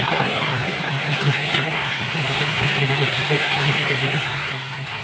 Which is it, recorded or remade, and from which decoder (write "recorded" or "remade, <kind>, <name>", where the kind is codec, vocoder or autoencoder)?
remade, codec, SNAC